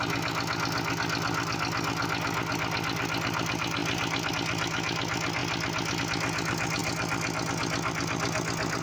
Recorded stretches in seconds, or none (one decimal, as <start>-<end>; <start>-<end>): 0.0-8.8